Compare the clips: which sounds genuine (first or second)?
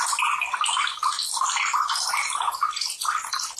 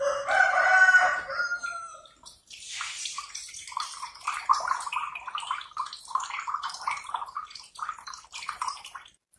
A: first